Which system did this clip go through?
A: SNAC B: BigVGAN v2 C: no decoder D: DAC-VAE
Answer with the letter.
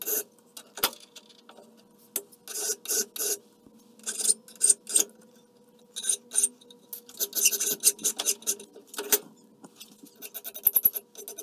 C